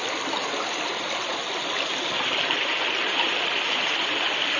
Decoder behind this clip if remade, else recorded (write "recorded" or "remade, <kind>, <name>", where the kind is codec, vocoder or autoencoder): recorded